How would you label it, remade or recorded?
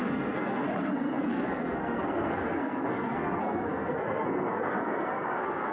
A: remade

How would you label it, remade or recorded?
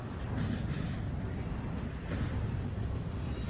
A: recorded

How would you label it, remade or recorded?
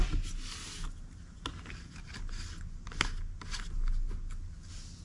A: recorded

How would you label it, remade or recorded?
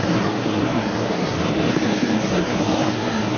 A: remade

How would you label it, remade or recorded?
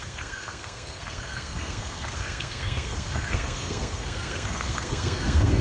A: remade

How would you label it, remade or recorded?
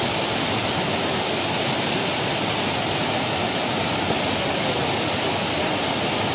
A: recorded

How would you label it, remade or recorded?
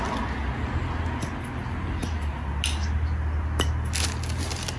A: recorded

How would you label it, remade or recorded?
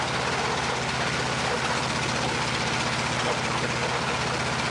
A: recorded